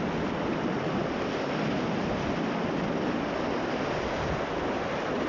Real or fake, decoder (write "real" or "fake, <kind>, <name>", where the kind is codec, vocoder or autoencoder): real